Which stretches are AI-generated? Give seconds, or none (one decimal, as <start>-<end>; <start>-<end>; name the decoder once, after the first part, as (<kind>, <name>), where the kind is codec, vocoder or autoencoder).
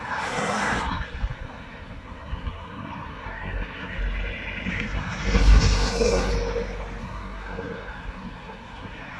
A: 0.0-4.0 (codec, SNAC); 4.7-6.3; 7.0-9.2